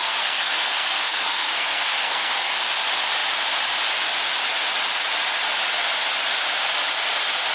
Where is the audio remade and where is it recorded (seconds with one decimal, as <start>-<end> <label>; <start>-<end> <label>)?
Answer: 0.0-2.5 remade; 2.5-7.5 recorded